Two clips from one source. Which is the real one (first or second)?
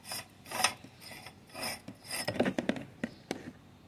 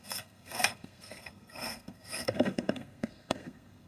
first